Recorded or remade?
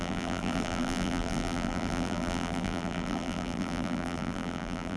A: remade